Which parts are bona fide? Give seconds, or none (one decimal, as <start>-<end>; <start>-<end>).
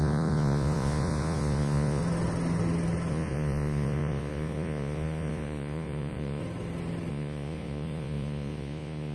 2.0-3.1; 6.4-7.1